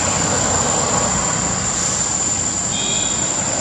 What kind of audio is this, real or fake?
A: fake